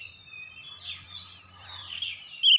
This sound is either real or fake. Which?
fake